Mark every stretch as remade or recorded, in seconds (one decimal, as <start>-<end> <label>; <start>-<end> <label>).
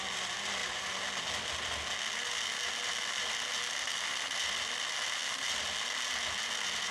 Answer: 0.0-6.9 recorded